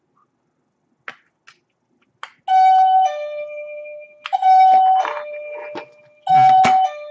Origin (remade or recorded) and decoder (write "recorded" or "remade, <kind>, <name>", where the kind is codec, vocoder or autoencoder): recorded